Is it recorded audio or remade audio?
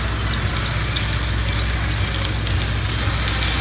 recorded